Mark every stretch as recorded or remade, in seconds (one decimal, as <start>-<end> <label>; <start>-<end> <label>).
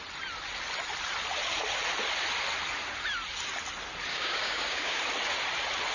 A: 0.0-4.1 recorded; 4.1-5.0 remade; 5.0-5.9 recorded